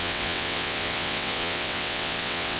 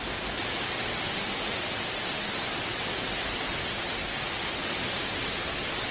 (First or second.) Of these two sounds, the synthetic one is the first